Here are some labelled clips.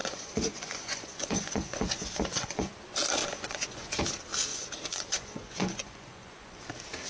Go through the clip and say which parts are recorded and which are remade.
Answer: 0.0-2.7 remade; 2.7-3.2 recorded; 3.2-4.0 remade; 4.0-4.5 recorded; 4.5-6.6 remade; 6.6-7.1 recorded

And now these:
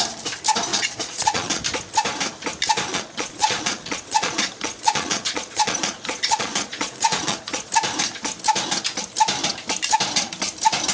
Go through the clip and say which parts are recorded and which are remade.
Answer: 0.0-0.7 recorded; 0.7-1.6 remade; 1.6-2.9 recorded; 2.9-7.7 remade; 7.7-10.9 recorded

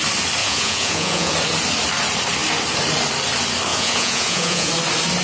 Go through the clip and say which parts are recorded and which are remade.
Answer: 0.0-0.4 recorded; 0.4-1.3 remade; 1.3-3.7 recorded; 3.7-4.7 remade; 4.7-5.2 recorded

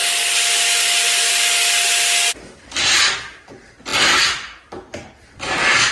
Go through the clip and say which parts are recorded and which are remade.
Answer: 0.0-5.9 recorded